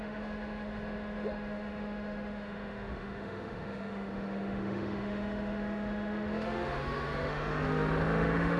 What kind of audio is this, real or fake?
fake